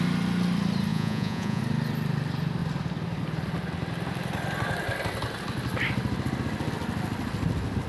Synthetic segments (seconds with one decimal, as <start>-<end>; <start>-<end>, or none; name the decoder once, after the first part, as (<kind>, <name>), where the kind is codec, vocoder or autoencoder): 0.9-1.6 (vocoder, Vocos)